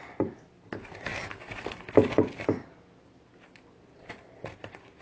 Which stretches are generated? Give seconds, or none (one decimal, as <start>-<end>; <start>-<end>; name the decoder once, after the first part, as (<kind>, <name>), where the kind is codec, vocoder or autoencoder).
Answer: none

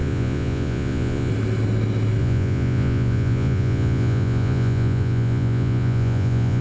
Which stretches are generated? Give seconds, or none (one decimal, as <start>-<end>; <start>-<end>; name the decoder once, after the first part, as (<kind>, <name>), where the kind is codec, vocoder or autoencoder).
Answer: 0.0-1.3 (vocoder, Vocos); 2.2-6.6

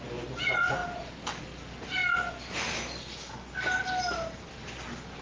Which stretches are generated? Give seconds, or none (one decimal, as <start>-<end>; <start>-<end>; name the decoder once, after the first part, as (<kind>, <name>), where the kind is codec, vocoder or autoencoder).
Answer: none

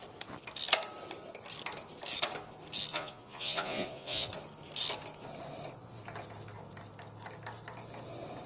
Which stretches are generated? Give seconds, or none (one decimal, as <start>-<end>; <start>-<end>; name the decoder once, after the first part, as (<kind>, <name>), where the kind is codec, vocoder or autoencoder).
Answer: 2.9-4.3 (vocoder, Vocos)

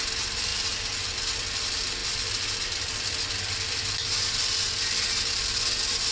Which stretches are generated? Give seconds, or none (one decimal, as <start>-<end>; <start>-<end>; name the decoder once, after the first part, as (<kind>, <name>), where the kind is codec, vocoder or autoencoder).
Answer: none

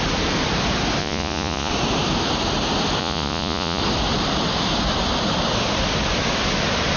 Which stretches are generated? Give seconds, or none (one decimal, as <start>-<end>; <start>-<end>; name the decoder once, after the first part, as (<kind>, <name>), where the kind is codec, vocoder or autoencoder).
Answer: 1.0-1.7 (vocoder, Vocos); 3.0-3.8

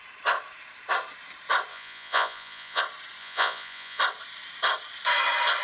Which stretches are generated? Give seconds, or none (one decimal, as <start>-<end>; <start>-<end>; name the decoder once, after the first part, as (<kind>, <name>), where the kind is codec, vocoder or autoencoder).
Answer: 1.7-2.8 (vocoder, Vocos); 3.2-4.0